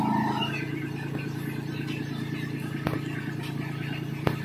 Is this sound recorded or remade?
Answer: recorded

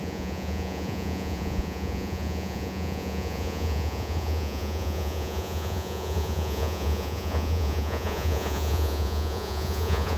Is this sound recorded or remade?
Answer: remade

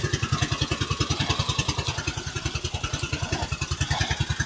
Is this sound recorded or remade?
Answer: recorded